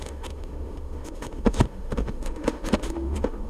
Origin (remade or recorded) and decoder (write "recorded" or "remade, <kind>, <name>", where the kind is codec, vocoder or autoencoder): remade, autoencoder, DAC-VAE